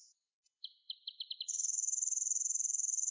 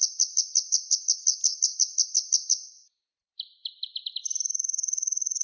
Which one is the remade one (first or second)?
first